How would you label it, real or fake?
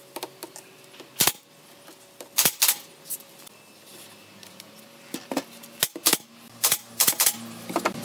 real